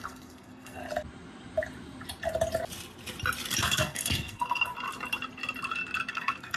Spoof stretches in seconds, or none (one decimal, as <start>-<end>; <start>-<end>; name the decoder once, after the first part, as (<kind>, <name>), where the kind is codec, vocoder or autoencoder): 0.0-0.8 (codec, SNAC); 3.6-4.7; 6.1-6.6